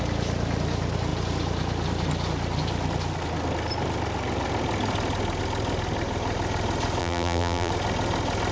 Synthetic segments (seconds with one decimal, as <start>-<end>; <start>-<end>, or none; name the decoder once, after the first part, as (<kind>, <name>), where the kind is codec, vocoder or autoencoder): 7.0-7.7 (vocoder, BigVGAN v2)